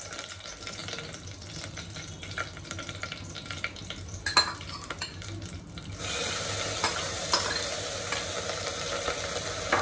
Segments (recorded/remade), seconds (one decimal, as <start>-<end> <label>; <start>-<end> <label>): 0.0-9.8 recorded